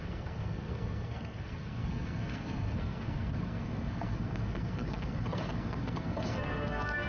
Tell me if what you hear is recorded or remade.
remade